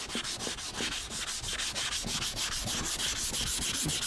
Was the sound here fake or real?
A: real